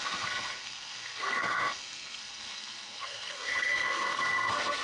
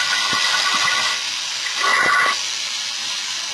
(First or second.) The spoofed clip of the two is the first